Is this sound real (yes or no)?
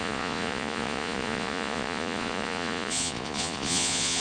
no